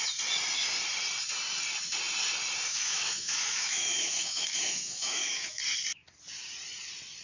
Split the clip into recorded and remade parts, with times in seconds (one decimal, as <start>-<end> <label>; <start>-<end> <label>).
0.0-2.7 recorded; 2.7-5.6 remade; 5.6-7.2 recorded